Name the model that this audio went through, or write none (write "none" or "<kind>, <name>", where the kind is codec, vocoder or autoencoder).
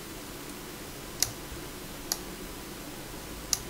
none